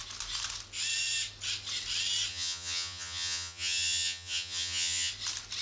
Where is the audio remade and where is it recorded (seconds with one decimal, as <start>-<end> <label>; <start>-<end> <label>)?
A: 0.0-2.3 recorded; 2.3-5.1 remade; 5.1-5.6 recorded